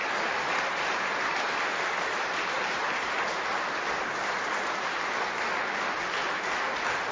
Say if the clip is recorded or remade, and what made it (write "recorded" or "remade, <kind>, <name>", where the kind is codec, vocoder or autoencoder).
recorded